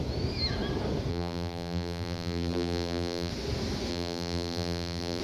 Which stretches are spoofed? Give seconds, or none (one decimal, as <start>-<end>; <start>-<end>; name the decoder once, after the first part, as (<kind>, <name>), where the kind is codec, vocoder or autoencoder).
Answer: 1.1-3.3 (vocoder, BigVGAN v2); 3.9-5.2